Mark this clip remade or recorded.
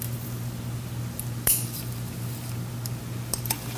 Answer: recorded